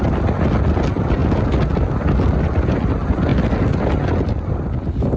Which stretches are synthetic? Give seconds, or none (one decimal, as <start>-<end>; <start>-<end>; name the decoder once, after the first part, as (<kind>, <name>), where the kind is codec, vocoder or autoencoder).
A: none